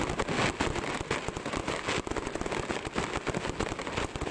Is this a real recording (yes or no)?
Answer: yes